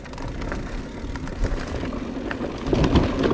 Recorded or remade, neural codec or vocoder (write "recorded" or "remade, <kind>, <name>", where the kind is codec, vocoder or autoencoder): recorded